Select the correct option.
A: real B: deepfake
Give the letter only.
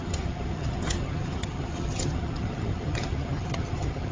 B